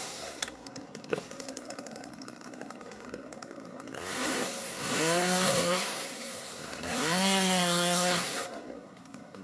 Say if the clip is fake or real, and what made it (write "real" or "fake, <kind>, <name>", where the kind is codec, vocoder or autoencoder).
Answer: fake, codec, SNAC